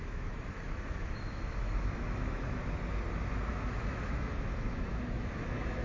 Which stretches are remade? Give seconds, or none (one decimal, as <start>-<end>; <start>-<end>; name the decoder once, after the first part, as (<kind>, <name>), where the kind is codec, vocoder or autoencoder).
0.0-2.6 (autoencoder, DAC-VAE); 3.5-5.8